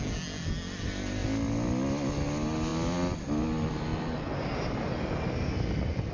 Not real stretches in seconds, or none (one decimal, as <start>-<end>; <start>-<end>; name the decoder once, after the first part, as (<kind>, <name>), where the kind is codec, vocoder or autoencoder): none